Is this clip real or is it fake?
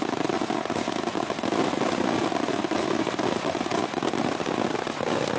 real